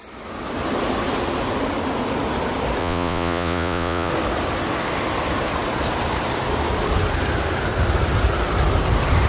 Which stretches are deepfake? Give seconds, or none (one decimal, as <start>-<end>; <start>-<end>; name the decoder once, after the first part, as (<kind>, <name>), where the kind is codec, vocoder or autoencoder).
2.8-4.1 (vocoder, Vocos)